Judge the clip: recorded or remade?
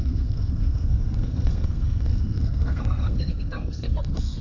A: remade